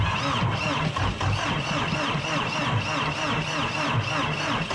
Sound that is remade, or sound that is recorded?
recorded